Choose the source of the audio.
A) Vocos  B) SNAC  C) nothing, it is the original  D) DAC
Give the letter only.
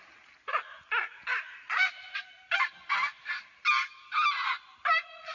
C